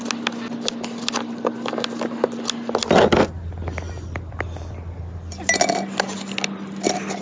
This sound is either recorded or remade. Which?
recorded